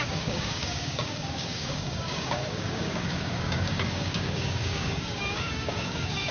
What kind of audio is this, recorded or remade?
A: remade